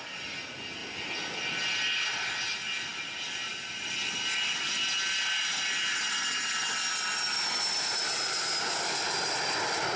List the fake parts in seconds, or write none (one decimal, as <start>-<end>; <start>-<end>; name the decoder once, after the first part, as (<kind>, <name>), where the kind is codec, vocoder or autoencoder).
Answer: none